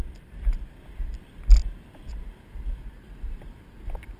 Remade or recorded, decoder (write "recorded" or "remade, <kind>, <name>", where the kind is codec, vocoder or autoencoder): recorded